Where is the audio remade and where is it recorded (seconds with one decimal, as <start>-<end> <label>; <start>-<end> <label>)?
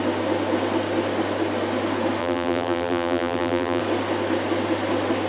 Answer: 0.0-2.2 recorded; 2.2-3.8 remade; 3.8-5.3 recorded